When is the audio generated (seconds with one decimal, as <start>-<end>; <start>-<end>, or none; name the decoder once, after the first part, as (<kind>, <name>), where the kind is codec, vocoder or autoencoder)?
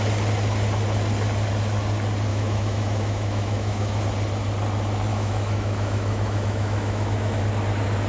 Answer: 2.3-4.0 (autoencoder, DAC-VAE); 5.1-7.4